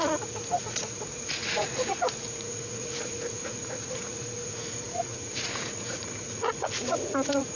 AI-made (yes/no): yes